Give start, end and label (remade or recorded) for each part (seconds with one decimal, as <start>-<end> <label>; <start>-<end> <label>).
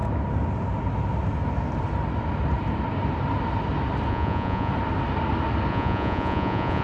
0.0-4.1 recorded; 4.1-4.7 remade; 4.7-5.7 recorded; 5.7-6.8 remade